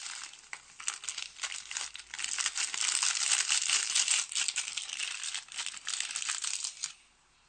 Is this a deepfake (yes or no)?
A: no